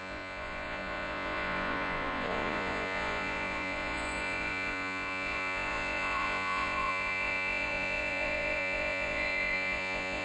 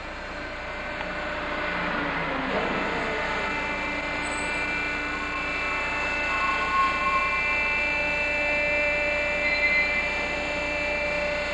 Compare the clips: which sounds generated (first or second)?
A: first